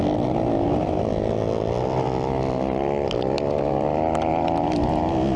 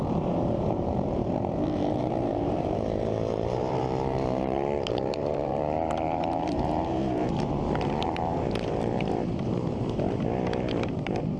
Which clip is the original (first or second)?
first